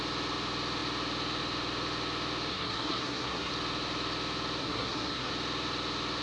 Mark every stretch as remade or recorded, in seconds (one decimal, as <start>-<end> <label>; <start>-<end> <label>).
0.0-2.5 recorded; 2.5-3.5 remade; 3.5-4.6 recorded; 4.6-5.3 remade; 5.3-6.2 recorded